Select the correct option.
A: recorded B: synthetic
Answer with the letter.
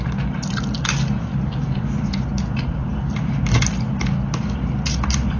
A